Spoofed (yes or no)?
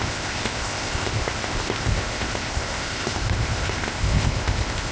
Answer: yes